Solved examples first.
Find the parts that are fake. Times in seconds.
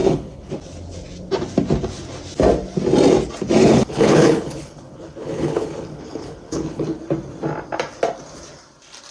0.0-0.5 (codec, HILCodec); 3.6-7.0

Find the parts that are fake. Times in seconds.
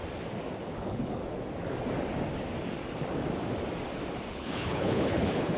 0.7-1.2 (codec, HILCodec); 4.3-5.6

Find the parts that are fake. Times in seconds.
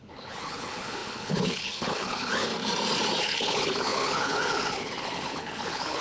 0.0-2.5 (codec, HILCodec); 3.2-6.0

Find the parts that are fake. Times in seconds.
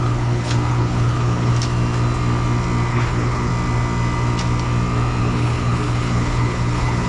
0.0-1.5 (codec, HILCodec); 2.9-3.5; 5.2-7.1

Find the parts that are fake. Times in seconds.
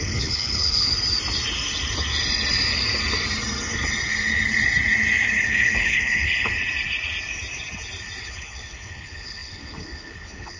0.0-0.9 (codec, HILCodec); 5.4-6.5; 8.2-10.6